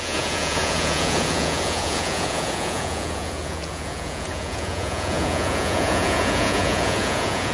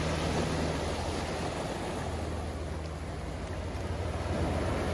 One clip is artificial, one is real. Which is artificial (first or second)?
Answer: first